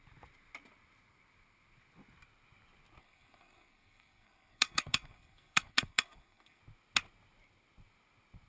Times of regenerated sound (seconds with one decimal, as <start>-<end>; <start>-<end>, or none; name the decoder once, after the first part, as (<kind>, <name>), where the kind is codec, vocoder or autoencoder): 3.0-6.6 (codec, SNAC)